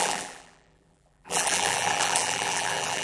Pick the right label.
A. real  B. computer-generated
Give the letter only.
B